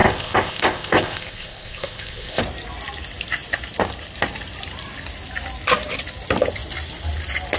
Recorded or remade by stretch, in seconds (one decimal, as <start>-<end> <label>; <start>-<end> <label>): 0.0-2.4 remade; 2.4-7.6 recorded